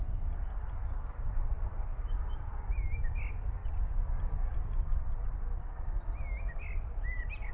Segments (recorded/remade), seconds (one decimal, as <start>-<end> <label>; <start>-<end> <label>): 0.0-7.5 recorded